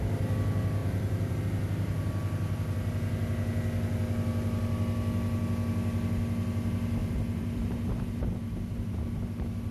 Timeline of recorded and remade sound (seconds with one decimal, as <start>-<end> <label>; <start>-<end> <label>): 0.0-0.8 recorded; 0.8-1.4 remade; 1.4-7.0 recorded; 7.0-9.0 remade; 9.0-9.7 recorded